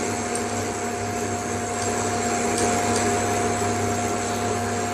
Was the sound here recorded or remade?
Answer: recorded